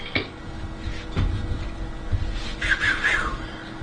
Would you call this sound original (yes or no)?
yes